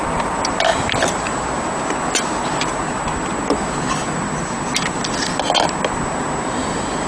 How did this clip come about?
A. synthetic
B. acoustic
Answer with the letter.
B